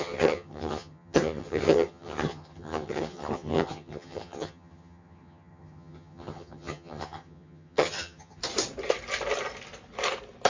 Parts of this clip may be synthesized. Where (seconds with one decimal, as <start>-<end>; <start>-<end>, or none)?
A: 0.0-8.4